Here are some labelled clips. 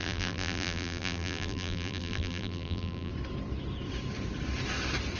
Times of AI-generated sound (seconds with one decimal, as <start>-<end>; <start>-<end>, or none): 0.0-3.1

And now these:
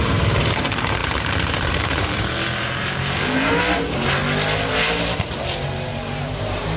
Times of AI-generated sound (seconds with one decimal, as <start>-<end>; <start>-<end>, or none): 0.0-4.2; 4.7-6.8

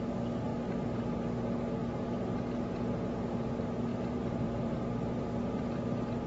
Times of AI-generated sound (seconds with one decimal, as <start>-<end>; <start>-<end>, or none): 1.8-3.5; 3.9-5.2